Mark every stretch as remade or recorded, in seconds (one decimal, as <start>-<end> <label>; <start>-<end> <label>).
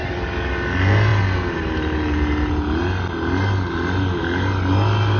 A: 0.0-5.2 recorded